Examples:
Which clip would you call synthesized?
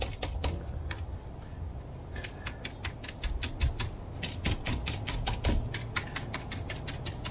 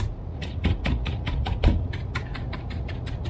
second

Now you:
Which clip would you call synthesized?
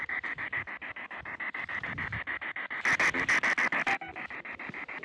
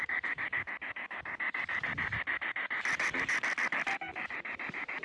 second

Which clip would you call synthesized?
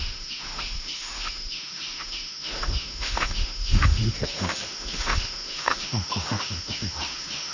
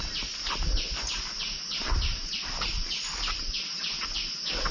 first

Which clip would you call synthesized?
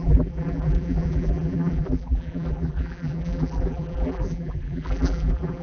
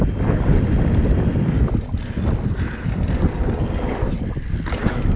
first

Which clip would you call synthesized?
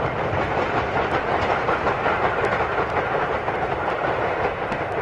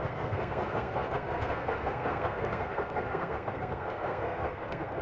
second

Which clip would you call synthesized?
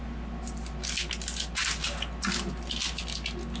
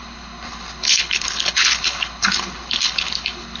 second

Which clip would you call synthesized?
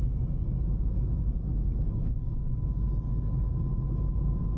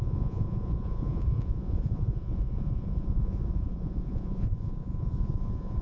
second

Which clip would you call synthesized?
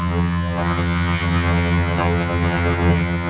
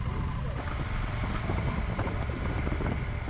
first